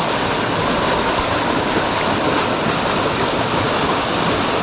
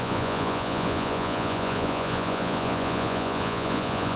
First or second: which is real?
first